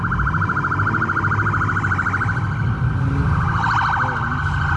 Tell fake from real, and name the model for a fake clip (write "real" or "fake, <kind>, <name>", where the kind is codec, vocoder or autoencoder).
real